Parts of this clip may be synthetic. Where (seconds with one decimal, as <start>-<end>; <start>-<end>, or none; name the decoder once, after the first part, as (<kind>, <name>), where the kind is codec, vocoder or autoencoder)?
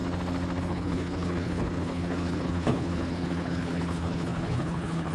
0.6-5.1 (codec, HILCodec)